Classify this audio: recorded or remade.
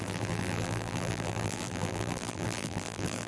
remade